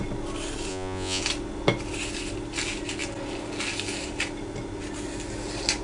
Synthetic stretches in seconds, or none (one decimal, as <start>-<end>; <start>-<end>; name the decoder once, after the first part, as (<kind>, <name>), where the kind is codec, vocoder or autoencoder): 0.7-1.2 (vocoder, Vocos)